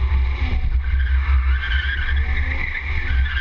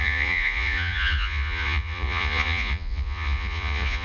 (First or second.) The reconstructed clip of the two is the second